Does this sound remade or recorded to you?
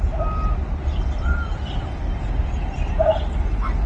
recorded